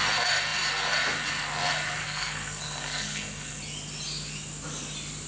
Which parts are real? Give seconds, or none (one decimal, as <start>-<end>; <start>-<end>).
0.0-2.0; 3.6-5.3